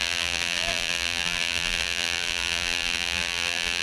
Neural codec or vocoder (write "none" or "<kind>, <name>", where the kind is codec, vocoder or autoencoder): vocoder, BigVGAN v2